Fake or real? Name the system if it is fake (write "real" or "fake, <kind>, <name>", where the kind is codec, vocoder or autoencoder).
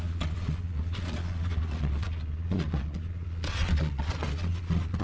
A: fake, vocoder, Vocos